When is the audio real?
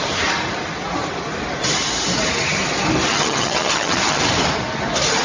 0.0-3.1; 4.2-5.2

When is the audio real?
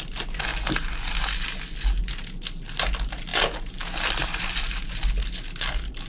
0.0-6.1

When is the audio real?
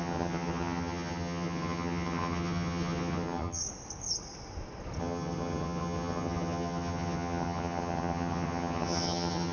3.6-5.0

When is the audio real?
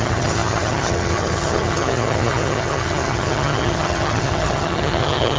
none